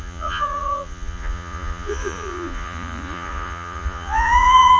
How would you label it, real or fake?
fake